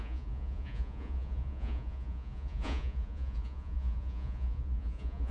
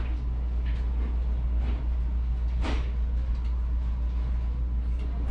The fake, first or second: first